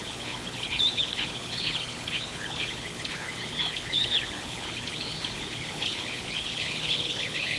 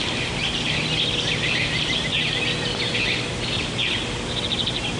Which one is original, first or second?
second